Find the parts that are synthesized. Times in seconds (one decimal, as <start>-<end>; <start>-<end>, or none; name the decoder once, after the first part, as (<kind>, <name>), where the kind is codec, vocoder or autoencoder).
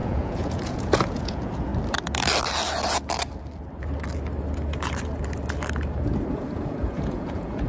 0.0-1.7 (vocoder, Vocos); 6.3-7.7